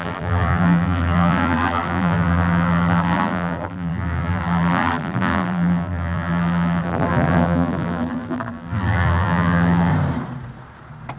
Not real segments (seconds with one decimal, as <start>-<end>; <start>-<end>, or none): 0.0-9.9